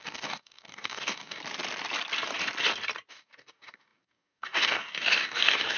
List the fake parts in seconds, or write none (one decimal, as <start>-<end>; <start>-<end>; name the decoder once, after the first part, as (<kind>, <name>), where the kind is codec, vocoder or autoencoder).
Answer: 0.0-1.4 (codec, DAC); 3.1-5.8